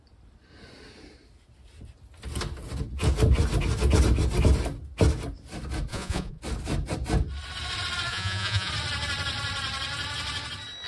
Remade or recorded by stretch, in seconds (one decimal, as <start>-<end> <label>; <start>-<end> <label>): 0.0-5.9 recorded; 5.9-6.4 remade; 6.4-8.1 recorded; 8.1-8.7 remade; 8.7-10.9 recorded